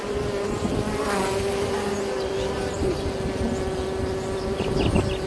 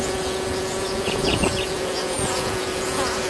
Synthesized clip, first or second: second